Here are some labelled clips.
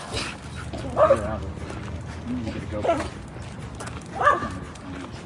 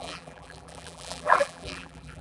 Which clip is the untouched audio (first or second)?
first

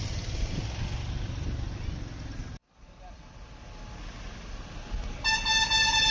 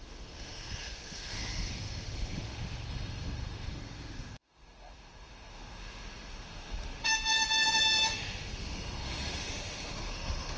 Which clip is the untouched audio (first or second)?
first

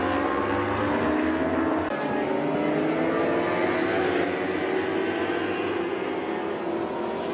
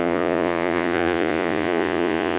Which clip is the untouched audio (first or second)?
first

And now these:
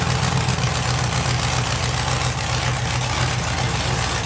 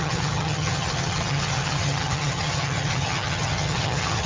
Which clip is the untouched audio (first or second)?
first